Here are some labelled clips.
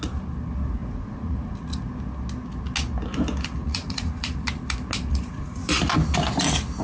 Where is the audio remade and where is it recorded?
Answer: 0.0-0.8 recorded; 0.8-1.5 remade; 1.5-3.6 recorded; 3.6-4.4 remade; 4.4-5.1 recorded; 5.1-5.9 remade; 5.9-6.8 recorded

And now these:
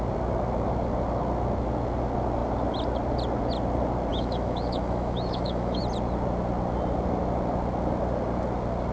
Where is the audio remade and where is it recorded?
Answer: 0.0-4.1 recorded; 4.1-5.8 remade; 5.8-8.9 recorded